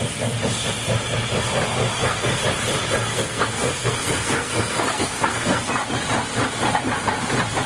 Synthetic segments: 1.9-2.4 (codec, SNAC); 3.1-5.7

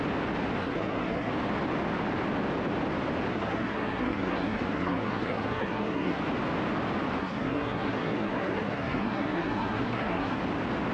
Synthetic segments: 0.6-1.3 (codec, SNAC); 3.3-6.2; 7.2-10.4

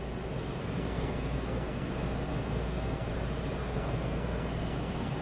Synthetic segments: 0.6-1.9 (codec, SNAC); 2.3-3.1; 3.6-5.2

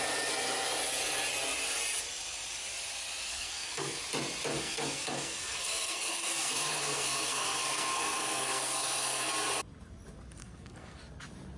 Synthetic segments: 3.3-4.0 (codec, SNAC); 4.5-9.3; 10.4-11.0

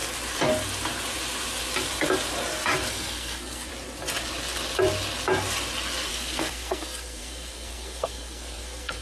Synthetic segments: 2.9-3.7 (codec, SNAC); 6.1-9.0